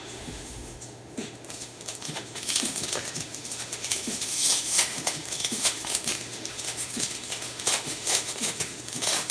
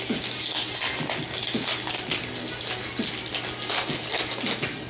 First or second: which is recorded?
second